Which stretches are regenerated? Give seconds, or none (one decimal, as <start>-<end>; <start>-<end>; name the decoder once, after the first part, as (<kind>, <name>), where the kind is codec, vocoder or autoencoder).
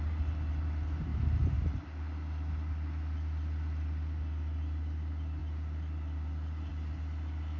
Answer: none